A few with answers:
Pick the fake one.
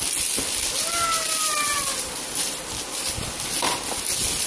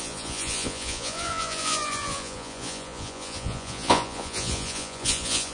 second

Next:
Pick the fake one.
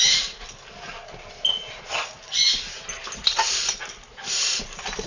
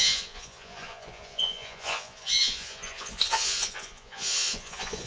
second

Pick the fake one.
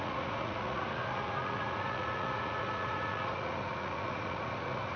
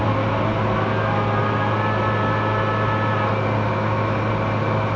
first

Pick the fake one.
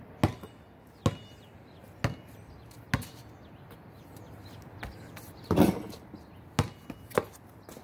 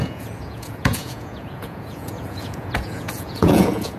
second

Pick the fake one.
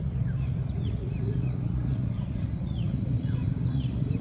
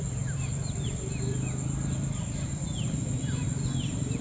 first